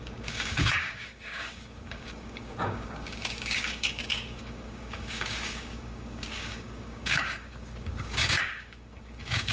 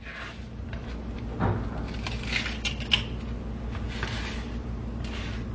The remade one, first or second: first